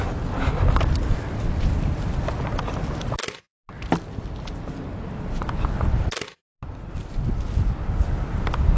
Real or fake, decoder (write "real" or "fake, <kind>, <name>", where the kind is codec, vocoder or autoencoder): real